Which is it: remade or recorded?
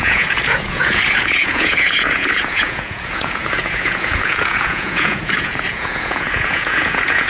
remade